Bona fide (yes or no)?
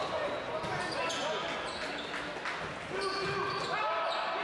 yes